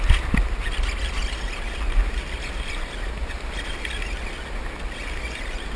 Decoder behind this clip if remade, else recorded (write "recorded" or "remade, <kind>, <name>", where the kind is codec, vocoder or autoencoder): recorded